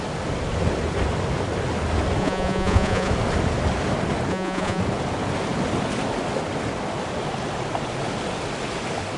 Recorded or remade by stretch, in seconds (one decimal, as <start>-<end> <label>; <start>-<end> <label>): 0.0-2.2 recorded; 2.2-3.1 remade; 3.1-4.3 recorded; 4.3-4.8 remade; 4.8-9.2 recorded

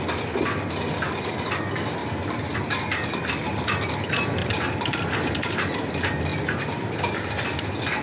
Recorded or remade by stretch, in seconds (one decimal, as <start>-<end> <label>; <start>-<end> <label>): 0.0-8.0 recorded

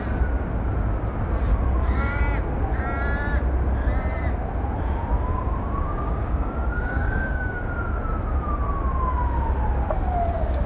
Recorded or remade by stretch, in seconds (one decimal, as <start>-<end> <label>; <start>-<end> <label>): 0.0-1.5 recorded; 1.5-2.2 remade; 2.2-5.1 recorded; 5.1-7.7 remade; 7.7-10.7 recorded

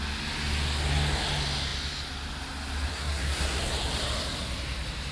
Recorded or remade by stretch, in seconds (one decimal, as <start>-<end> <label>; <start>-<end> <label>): 0.0-2.9 recorded; 2.9-3.6 remade; 3.6-5.1 recorded

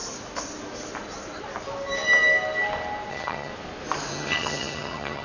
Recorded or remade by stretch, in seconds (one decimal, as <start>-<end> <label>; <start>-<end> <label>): 0.0-3.1 recorded; 3.1-3.5 remade; 3.5-4.1 recorded; 4.1-5.2 remade

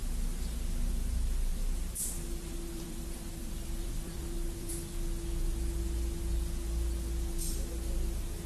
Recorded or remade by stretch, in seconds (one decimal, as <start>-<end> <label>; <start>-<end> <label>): 0.0-1.5 recorded; 1.5-4.7 remade; 4.7-8.5 recorded

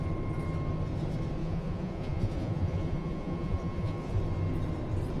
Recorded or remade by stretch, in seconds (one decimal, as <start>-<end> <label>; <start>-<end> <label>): 0.0-1.4 recorded; 1.4-4.2 remade; 4.2-5.2 recorded